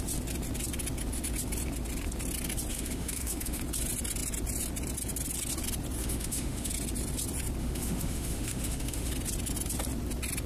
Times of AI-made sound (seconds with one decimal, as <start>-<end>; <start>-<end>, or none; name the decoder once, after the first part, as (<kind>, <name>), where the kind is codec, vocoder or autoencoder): 2.7-3.6 (autoencoder, DAC-VAE); 6.0-6.7; 7.6-9.1